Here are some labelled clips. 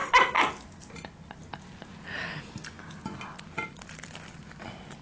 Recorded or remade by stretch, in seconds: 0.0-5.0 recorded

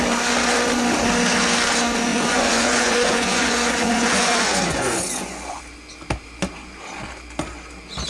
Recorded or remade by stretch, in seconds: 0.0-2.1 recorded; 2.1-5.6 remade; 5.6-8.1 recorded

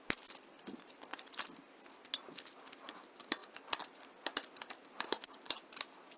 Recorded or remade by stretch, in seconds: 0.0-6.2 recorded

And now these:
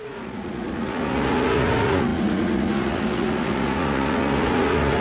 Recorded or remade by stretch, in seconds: 0.0-5.0 remade

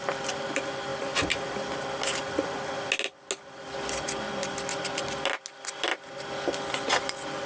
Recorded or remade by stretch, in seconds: 0.0-7.5 recorded